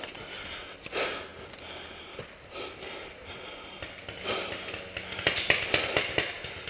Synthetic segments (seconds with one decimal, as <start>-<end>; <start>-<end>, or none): none